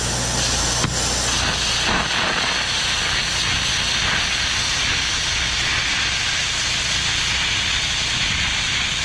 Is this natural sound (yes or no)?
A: yes